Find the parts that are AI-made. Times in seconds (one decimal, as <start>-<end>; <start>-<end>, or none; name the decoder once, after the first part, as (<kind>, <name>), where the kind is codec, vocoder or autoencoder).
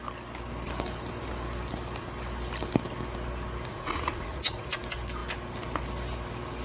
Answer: 3.7-4.8 (vocoder, Vocos)